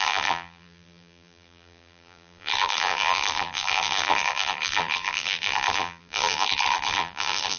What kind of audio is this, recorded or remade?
remade